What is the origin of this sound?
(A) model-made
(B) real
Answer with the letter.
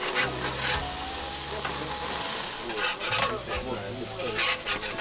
B